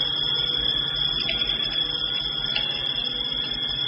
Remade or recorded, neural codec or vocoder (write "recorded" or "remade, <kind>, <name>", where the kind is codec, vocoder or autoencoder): recorded